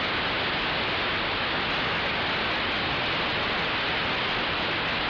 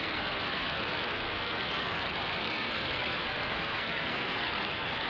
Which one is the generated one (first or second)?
second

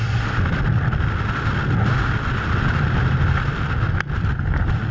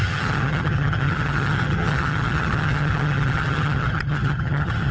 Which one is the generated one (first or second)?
second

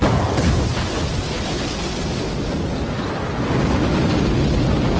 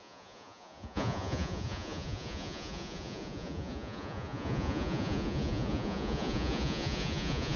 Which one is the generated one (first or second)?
second